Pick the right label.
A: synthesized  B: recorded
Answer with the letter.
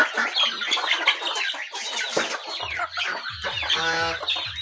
B